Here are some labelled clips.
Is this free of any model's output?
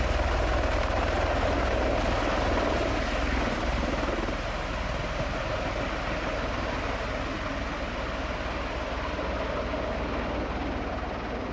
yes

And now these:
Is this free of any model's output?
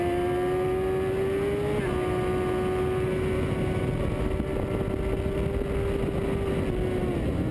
yes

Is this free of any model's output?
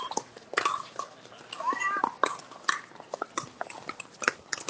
yes